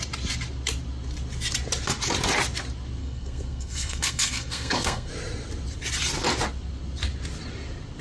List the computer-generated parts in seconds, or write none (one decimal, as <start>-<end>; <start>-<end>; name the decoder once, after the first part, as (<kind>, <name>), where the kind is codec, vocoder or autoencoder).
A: 3.0-5.1 (codec, SNAC)